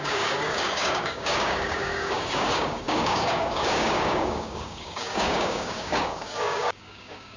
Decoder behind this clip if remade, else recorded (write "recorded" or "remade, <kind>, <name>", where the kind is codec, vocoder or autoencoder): remade, codec, DAC